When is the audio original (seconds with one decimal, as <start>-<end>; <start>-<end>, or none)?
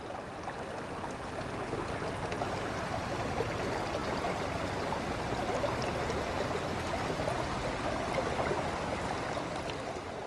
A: 0.0-10.3